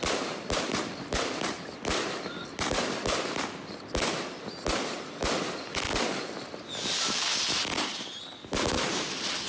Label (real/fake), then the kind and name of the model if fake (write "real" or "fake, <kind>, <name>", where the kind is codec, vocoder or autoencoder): real